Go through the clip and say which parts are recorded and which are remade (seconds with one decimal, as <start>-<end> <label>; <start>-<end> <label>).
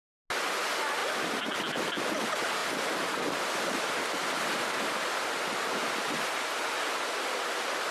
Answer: 0.0-7.9 recorded